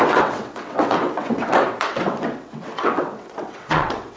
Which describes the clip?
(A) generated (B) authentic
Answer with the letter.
A